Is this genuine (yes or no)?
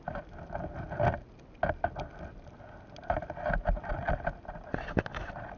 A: yes